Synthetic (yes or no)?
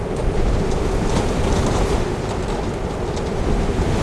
no